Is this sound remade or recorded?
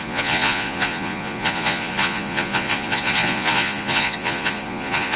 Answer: remade